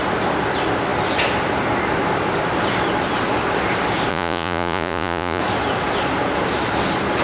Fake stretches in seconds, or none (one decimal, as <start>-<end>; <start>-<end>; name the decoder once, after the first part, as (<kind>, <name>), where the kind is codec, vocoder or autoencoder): 4.1-5.4 (vocoder, Vocos)